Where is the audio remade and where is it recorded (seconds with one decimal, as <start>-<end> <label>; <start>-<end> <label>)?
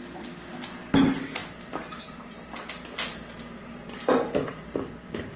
0.0-5.4 recorded